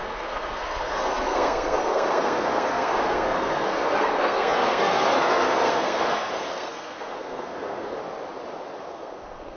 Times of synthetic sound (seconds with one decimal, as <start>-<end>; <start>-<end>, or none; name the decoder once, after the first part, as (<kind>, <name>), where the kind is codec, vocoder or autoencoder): 0.0-8.0 (codec, SNAC); 8.8-9.6